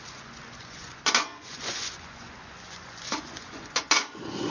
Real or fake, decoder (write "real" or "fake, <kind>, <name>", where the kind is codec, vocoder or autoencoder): fake, vocoder, Vocos